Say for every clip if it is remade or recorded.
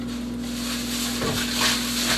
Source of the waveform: recorded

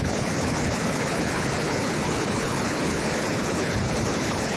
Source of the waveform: remade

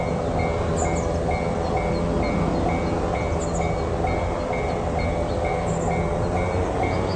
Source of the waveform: recorded